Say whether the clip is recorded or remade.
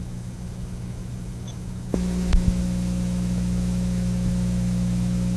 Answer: remade